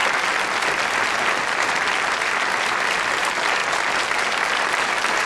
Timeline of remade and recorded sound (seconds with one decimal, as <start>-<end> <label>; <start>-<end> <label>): 0.0-5.3 recorded